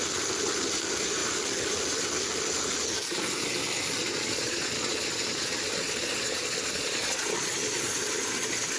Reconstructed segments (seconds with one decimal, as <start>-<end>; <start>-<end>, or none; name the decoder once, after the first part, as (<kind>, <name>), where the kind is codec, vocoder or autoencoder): 4.0-8.8 (vocoder, Vocos)